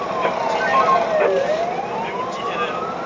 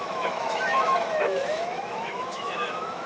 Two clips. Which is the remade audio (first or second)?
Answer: second